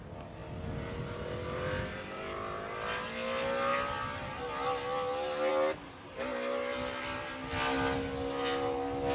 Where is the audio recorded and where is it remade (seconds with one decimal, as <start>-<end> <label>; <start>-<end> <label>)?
0.0-9.1 recorded